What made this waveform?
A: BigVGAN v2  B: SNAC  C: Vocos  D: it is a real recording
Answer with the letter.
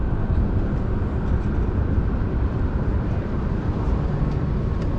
A